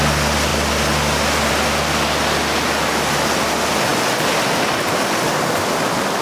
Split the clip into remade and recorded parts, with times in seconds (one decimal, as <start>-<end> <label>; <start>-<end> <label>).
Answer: 0.0-6.2 recorded